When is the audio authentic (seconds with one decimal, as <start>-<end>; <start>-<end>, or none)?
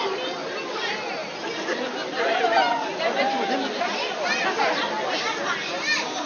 0.0-6.3